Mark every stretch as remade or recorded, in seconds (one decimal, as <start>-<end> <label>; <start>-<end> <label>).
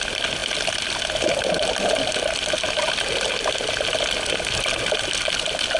0.0-5.8 recorded